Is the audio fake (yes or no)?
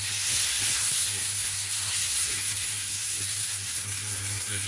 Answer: yes